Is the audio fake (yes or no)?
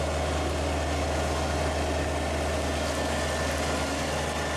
no